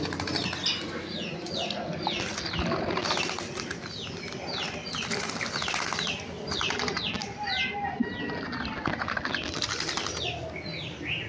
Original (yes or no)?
yes